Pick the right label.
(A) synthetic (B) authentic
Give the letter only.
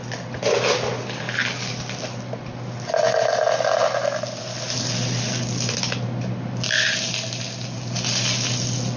B